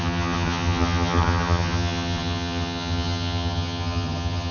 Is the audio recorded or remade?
remade